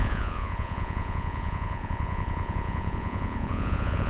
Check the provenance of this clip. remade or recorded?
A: remade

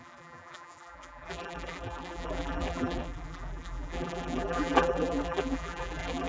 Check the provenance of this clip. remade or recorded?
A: remade